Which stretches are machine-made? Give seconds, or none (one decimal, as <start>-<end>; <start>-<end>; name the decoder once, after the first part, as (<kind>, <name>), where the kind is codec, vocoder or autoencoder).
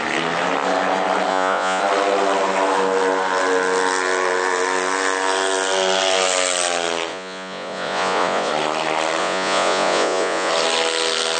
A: 1.3-1.8 (vocoder, Vocos); 7.1-8.5; 9.2-10.5